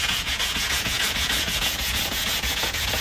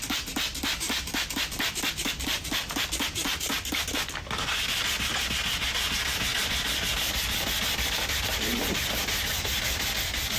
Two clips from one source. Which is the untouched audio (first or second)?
second